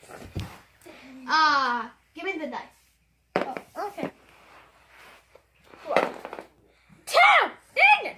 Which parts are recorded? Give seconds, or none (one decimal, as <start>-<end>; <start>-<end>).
0.0-2.1; 4.1-4.7; 6.0-8.2